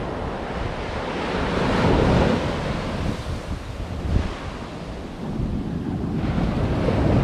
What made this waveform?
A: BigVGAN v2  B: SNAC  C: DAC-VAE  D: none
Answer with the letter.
D